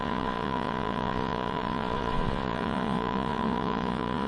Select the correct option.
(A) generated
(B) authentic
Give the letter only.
A